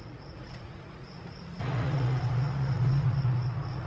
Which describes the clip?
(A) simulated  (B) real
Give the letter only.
A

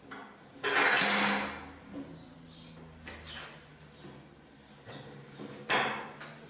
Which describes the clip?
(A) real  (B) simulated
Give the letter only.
A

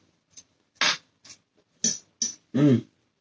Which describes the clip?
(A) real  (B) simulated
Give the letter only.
A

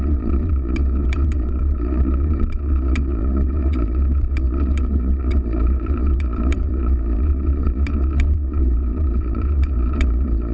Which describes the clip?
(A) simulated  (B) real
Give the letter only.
A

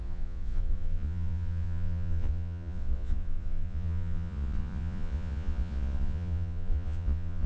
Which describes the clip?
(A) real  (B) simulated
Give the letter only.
B